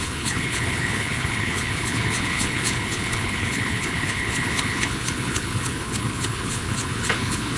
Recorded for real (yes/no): no